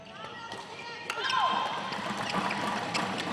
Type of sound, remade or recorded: remade